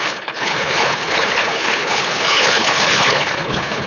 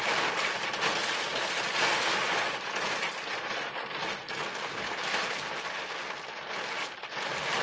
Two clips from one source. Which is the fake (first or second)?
first